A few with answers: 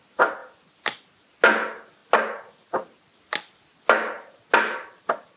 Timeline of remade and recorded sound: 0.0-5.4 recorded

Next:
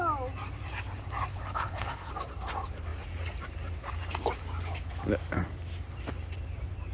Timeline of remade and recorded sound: 0.0-1.3 recorded; 1.3-2.1 remade; 2.1-6.9 recorded